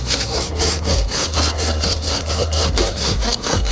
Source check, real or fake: fake